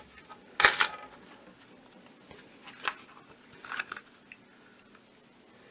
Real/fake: real